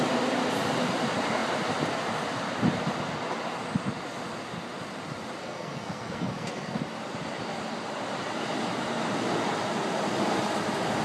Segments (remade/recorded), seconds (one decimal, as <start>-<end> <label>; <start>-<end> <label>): 0.0-5.4 recorded; 5.4-6.8 remade; 6.8-11.0 recorded